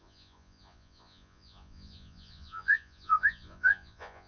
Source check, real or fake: fake